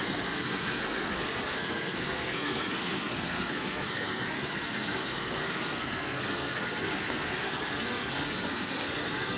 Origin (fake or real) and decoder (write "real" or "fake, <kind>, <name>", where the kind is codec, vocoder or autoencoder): fake, codec, SNAC